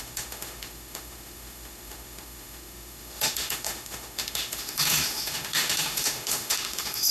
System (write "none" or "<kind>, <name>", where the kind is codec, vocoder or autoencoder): autoencoder, DAC-VAE